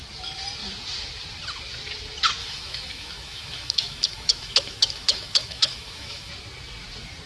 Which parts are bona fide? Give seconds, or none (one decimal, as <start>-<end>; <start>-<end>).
0.0-2.4; 6.3-7.3